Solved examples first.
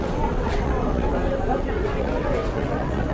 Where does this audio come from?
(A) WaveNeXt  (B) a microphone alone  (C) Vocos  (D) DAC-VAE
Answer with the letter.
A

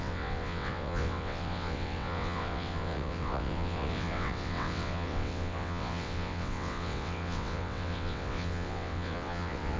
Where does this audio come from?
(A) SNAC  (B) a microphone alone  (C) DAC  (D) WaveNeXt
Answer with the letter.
D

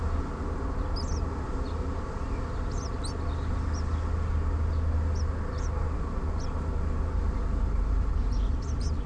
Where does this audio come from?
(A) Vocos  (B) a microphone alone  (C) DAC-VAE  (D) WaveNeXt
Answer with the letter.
B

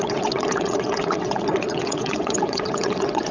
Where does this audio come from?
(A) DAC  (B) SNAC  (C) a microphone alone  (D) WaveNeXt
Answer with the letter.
D